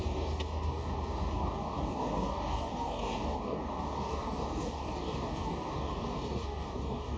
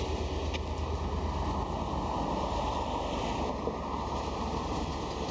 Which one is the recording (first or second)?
second